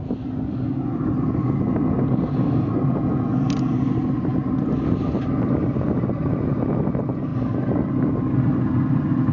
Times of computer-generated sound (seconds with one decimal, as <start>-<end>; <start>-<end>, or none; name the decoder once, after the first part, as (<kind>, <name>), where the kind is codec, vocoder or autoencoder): none